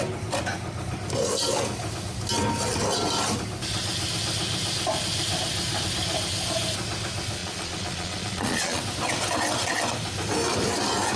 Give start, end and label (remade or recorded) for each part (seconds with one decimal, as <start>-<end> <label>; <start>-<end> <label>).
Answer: 0.0-7.4 recorded; 7.4-8.8 remade; 8.8-11.2 recorded